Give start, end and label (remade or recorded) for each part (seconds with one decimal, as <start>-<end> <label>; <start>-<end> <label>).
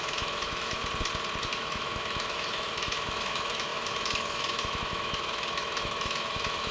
0.0-0.8 remade; 0.8-1.4 recorded; 1.4-6.7 remade